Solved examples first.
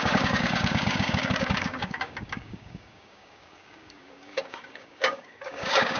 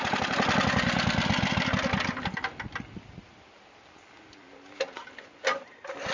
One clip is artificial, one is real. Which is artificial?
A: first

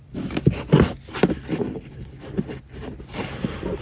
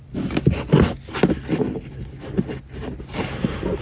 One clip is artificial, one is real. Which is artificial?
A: first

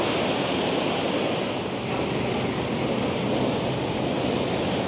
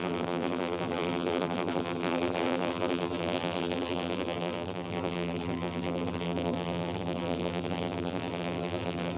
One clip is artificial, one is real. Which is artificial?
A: second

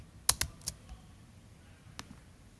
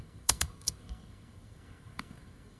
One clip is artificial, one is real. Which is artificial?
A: second